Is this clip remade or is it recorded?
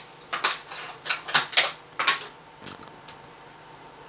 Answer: recorded